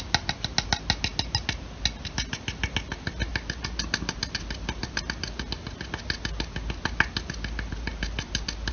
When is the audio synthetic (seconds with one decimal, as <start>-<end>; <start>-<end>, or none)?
none